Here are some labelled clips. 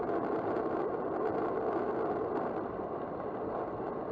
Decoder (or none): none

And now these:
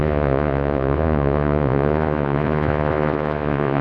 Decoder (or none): vocoder, Vocos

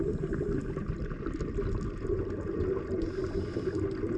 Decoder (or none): none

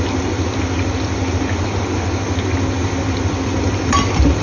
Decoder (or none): none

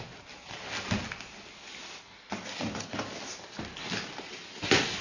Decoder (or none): none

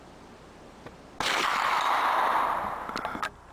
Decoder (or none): none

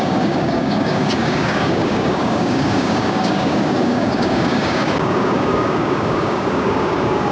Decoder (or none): codec, DAC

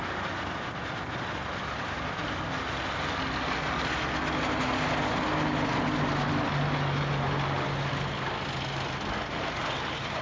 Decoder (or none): none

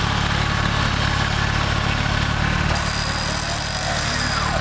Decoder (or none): none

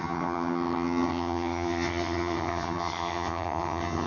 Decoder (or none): vocoder, HiFi-GAN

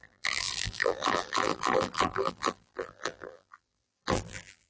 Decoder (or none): vocoder, BigVGAN v2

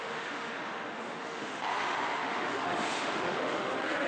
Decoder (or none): autoencoder, DAC-VAE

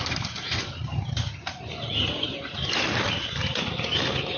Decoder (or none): vocoder, BigVGAN v2